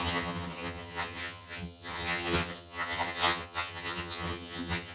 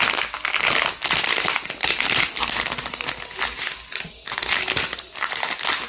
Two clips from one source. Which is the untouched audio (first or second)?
second